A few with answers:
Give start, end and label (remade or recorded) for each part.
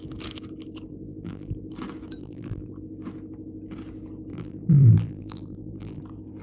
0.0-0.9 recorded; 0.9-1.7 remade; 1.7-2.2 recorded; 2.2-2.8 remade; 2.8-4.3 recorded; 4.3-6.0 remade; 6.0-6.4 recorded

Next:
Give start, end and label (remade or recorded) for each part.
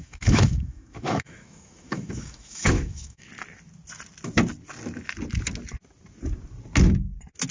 0.0-3.3 remade; 3.3-7.5 recorded